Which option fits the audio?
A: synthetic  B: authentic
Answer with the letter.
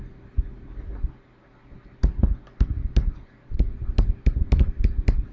B